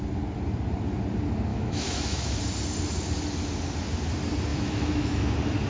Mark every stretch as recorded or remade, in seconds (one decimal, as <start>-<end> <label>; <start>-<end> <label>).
0.0-1.5 recorded; 1.5-2.3 remade; 2.3-4.5 recorded; 4.5-5.3 remade; 5.3-5.7 recorded